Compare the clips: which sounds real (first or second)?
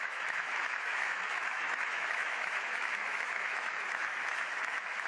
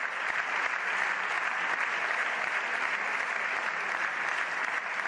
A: second